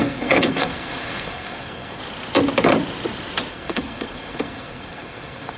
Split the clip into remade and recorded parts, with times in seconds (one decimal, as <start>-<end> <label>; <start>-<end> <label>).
0.0-2.0 remade; 2.0-3.5 recorded; 3.5-5.6 remade